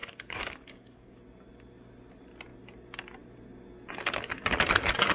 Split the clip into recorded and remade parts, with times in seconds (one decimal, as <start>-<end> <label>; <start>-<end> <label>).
0.0-1.2 remade; 1.2-5.1 recorded